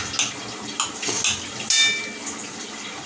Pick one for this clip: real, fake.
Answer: real